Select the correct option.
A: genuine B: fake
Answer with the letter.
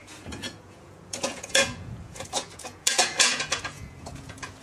B